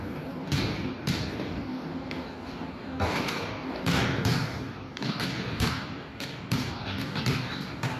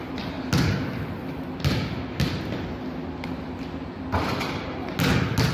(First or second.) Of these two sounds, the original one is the second